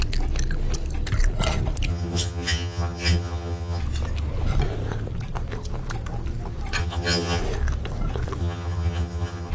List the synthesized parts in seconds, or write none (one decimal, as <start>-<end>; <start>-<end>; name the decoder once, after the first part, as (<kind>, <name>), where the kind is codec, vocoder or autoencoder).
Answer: 1.9-3.8 (vocoder, HiFi-GAN); 6.8-7.4; 8.4-9.5